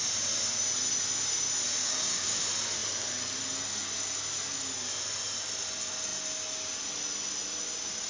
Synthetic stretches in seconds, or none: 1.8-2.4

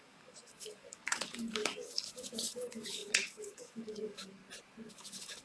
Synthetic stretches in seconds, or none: 0.0-4.4; 4.9-5.4

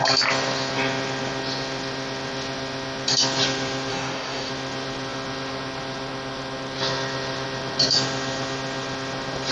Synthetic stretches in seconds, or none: 3.9-4.5

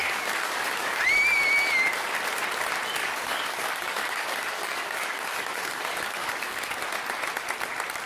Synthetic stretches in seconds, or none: 0.0-1.0; 3.0-6.8

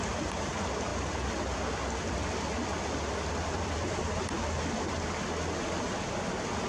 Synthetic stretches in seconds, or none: none

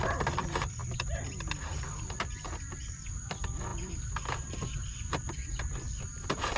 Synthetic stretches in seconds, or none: none

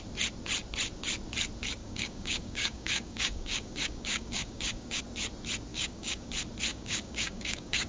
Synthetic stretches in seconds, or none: 1.8-5.0; 5.7-6.3; 6.7-7.9